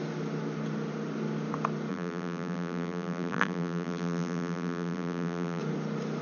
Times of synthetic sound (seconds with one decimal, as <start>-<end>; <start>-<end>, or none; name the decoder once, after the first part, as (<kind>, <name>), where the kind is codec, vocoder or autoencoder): 1.9-5.6 (vocoder, BigVGAN v2)